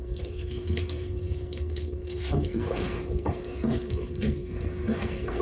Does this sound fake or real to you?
fake